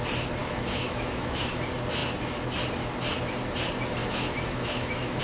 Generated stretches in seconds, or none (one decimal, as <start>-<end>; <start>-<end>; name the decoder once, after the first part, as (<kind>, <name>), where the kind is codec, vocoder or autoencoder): 0.4-1.6 (autoencoder, DAC-VAE); 4.0-5.2